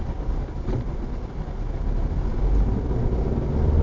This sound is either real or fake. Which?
real